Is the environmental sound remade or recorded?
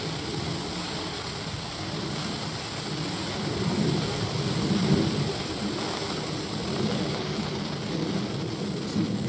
recorded